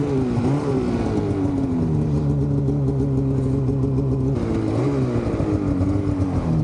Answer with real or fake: real